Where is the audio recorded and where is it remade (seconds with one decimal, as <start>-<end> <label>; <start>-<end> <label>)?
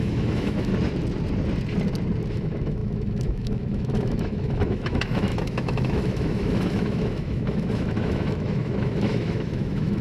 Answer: 0.0-0.7 remade; 0.7-2.3 recorded; 2.3-10.0 remade